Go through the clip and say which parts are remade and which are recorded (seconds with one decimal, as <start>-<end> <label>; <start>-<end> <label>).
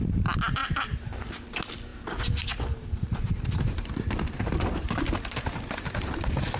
0.0-0.6 remade; 0.6-1.2 recorded; 1.2-6.6 remade